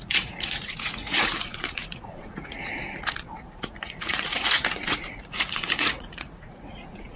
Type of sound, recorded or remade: remade